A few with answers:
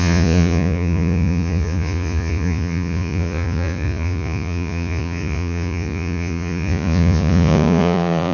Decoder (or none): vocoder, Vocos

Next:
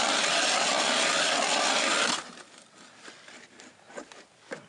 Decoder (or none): none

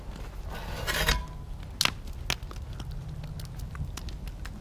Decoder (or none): none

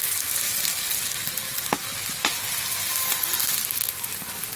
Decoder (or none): none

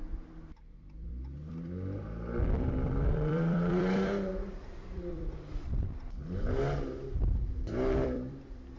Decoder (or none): vocoder, BigVGAN v2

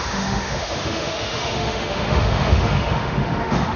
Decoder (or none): autoencoder, DAC-VAE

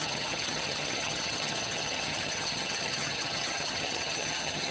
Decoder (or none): vocoder, HiFi-GAN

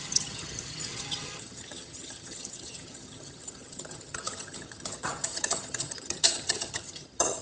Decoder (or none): vocoder, HiFi-GAN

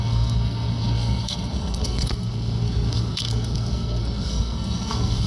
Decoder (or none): codec, SNAC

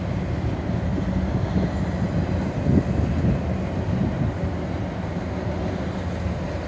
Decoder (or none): none